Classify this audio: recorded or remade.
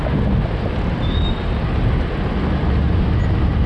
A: recorded